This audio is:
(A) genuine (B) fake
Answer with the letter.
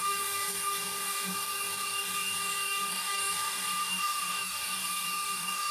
B